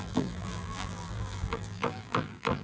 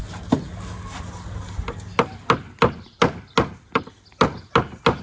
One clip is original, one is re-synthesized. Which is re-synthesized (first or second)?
first